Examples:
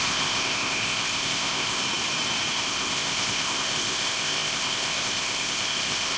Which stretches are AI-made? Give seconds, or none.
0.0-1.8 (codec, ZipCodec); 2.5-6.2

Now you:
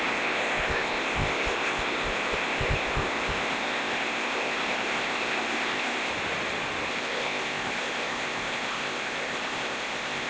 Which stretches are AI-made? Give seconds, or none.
0.0-6.1 (codec, ZipCodec); 6.9-10.3

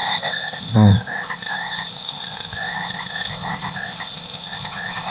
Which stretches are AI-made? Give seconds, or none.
0.0-5.1 (codec, ZipCodec)

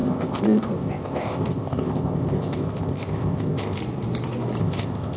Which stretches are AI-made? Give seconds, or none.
0.0-3.8 (codec, ZipCodec); 4.6-5.2

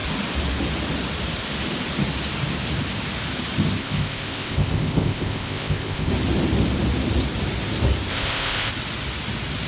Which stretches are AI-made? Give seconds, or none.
3.8-6.1 (codec, ZipCodec); 8.1-8.7